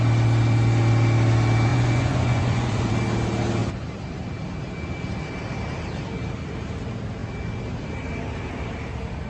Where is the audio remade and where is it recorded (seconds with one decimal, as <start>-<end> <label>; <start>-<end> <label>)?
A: 0.0-1.7 recorded; 1.7-2.9 remade; 2.9-9.3 recorded